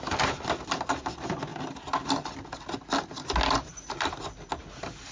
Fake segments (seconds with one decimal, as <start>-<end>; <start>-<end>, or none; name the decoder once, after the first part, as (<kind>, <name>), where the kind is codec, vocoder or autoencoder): none